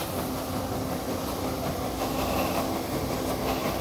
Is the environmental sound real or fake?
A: real